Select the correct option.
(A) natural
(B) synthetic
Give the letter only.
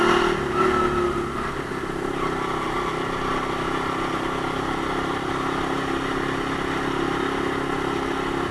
A